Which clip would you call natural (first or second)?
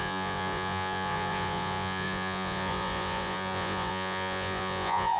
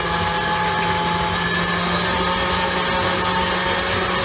second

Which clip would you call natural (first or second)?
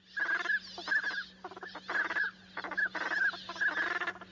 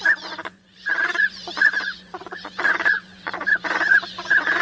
first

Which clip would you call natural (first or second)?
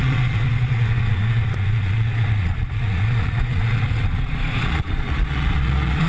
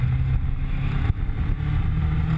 second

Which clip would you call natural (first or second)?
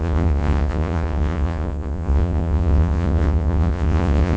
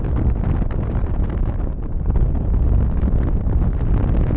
second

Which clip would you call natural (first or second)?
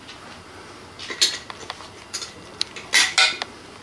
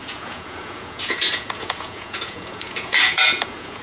first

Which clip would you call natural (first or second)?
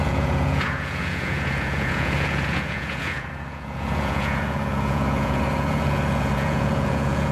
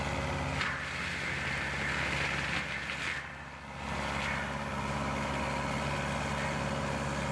second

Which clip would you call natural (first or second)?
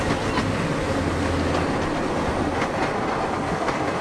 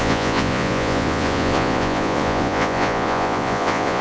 first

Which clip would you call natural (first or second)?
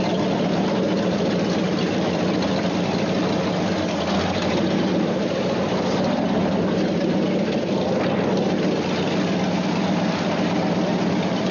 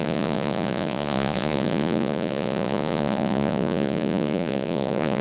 first